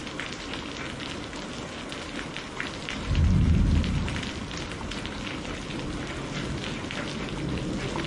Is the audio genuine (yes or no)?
yes